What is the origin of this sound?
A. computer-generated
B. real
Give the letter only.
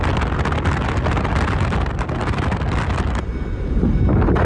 B